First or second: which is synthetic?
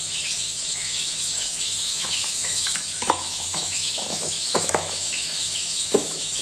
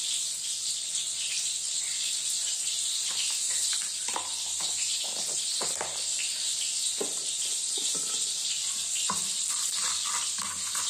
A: first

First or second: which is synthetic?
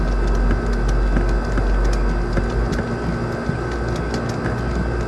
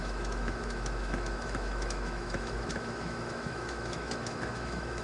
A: second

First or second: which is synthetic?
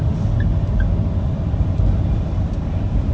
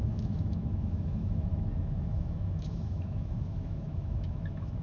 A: second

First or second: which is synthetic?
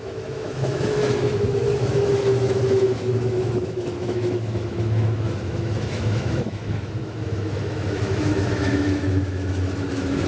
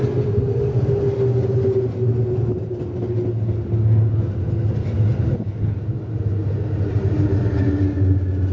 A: first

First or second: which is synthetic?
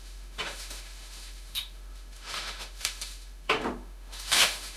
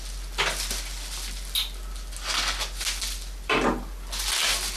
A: first